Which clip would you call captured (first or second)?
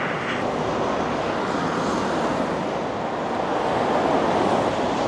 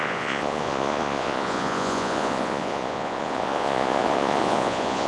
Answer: first